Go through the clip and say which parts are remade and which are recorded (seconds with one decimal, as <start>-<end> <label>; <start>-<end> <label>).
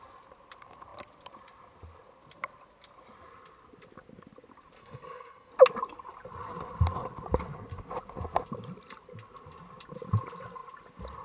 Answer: 0.0-4.8 recorded; 4.8-5.5 remade; 5.5-11.2 recorded